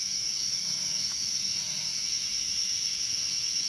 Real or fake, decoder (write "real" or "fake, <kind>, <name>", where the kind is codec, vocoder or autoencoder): fake, autoencoder, DAC-VAE